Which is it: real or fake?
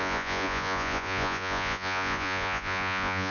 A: fake